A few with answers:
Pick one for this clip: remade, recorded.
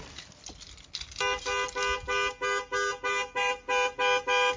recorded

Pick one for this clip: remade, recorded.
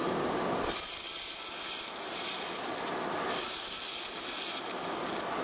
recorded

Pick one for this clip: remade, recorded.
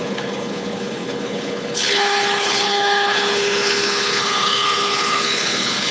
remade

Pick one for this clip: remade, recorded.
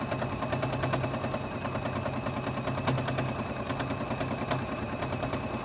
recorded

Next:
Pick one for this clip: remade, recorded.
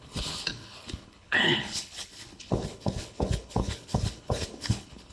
remade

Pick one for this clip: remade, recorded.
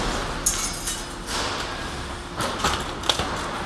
recorded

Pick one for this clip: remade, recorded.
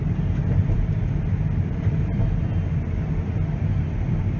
recorded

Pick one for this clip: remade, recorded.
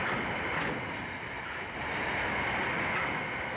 recorded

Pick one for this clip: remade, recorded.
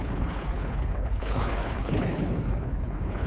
remade